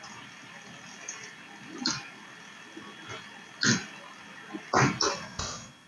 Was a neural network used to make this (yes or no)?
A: no